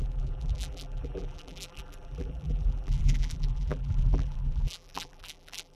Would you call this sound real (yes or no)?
no